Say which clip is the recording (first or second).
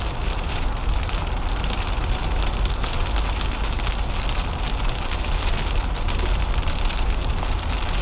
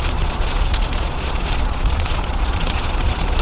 first